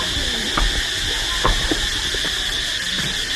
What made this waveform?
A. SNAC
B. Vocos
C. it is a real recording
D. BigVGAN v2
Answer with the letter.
C